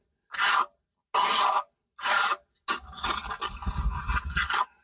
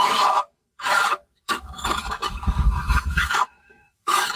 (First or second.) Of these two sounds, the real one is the first